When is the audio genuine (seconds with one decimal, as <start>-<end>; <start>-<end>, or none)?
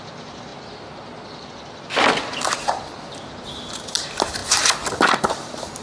0.0-5.8